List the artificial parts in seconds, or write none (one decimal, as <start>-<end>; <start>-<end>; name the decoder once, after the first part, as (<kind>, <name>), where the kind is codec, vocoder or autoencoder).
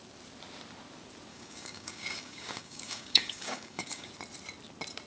1.3-4.1 (codec, DAC)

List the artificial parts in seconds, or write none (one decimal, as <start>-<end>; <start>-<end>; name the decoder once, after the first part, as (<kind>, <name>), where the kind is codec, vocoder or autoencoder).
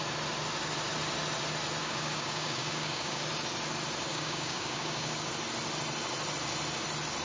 1.8-3.2 (codec, DAC); 4.1-5.3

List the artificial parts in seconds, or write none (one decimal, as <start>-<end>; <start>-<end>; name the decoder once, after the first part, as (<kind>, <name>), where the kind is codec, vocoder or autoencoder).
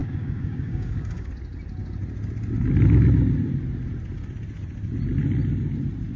0.0-1.3 (codec, DAC)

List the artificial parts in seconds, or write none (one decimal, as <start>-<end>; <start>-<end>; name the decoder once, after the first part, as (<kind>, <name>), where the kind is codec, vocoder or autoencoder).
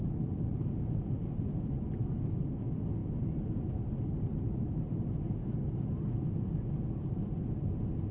5.4-5.9 (codec, DAC)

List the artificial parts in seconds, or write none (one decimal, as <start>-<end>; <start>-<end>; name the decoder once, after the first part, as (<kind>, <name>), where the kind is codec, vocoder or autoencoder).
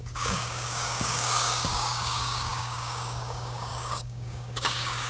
0.0-5.1 (codec, DAC)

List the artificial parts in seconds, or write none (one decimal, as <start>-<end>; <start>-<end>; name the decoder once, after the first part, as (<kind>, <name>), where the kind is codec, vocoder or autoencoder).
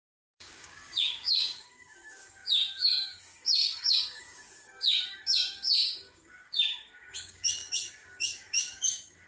0.0-9.3 (codec, DAC)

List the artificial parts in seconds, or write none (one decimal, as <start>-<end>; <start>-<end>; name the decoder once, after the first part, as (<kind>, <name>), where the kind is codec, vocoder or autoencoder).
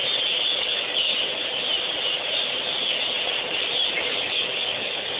0.6-1.1 (codec, DAC); 4.2-5.2